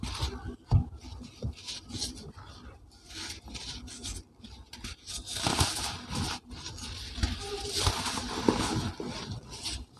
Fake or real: real